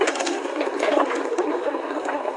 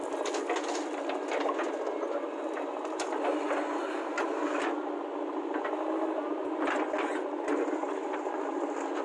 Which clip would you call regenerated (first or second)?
first